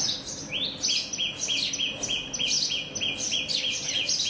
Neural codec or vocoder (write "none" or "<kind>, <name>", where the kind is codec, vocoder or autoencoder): none